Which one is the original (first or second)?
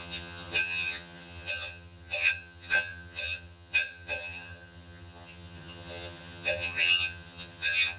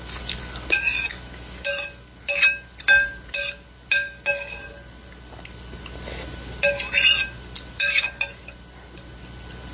second